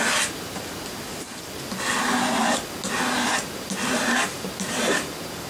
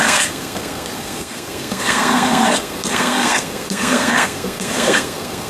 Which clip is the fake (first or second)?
second